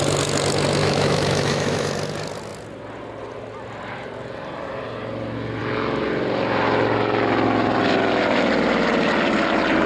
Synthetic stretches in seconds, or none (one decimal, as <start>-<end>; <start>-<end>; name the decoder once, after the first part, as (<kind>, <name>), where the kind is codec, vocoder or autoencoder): 0.8-1.9 (autoencoder, DAC-VAE)